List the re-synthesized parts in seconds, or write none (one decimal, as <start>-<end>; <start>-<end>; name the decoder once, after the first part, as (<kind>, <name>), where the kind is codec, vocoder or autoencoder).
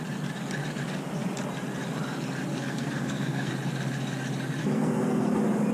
2.5-3.5 (codec, SNAC); 4.6-5.3